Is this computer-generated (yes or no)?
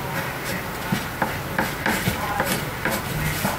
no